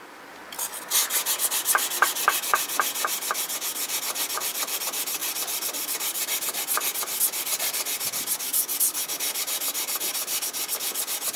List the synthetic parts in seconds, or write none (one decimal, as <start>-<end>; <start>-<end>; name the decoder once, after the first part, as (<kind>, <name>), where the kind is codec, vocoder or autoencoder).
0.0-0.4 (vocoder, BigVGAN v2); 4.3-5.2; 7.2-8.5; 10.8-11.4